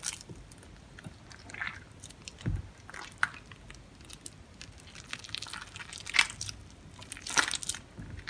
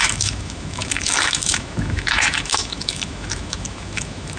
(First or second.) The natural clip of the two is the first